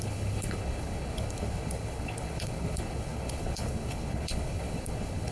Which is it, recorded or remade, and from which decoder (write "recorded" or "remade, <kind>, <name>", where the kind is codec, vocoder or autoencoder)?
remade, codec, HILCodec